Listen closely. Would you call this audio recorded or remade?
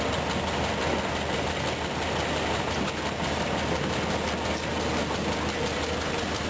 recorded